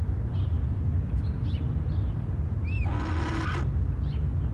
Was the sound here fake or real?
real